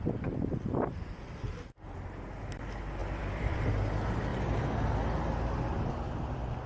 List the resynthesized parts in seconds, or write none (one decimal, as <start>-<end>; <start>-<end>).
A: 3.0-3.7